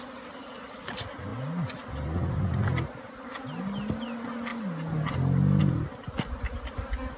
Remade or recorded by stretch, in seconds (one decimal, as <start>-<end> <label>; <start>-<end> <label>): 0.0-7.2 recorded